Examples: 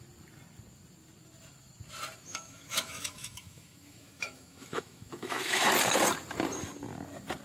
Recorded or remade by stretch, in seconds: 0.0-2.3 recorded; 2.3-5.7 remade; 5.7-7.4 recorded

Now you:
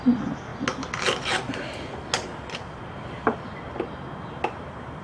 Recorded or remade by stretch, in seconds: 0.0-5.0 recorded

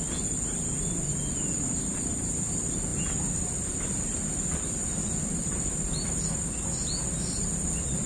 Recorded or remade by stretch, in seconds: 0.0-8.1 recorded